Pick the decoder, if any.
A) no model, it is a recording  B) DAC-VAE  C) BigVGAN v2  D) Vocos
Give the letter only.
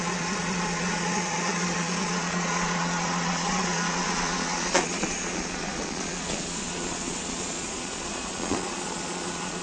D